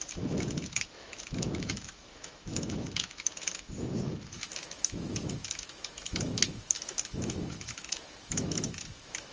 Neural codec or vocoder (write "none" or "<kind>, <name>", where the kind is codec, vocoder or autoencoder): autoencoder, DAC-VAE